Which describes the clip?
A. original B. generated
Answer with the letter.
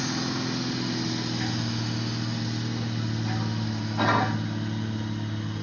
A